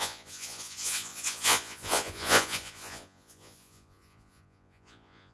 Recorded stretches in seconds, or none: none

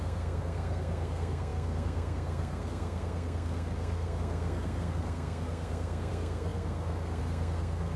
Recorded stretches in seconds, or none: none

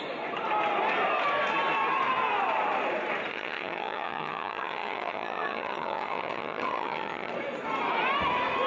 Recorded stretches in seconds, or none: 0.0-3.3; 7.3-8.7

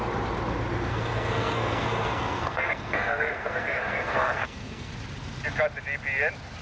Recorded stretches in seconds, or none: 0.0-0.9; 4.9-6.6

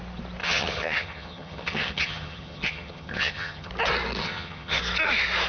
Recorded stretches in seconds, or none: 0.0-0.4; 3.7-4.2; 4.8-5.5

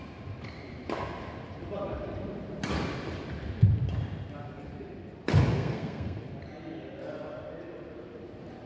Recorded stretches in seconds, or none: 0.0-5.5; 6.2-8.7